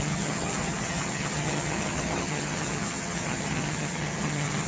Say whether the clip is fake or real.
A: fake